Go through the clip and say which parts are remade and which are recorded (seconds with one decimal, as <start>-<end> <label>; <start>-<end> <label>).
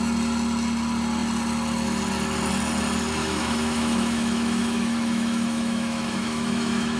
0.0-3.2 recorded; 3.2-7.0 remade